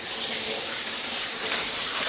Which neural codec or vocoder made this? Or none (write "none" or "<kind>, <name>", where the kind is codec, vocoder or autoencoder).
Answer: vocoder, BigVGAN v2